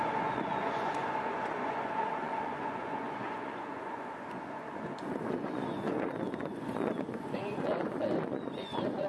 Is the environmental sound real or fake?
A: fake